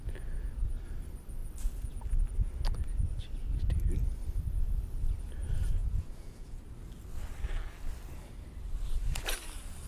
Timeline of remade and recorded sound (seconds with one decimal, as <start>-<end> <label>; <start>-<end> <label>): 0.0-5.8 recorded; 5.8-6.6 remade; 6.6-9.9 recorded